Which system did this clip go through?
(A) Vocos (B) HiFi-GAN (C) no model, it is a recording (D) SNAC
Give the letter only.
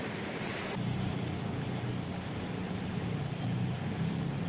C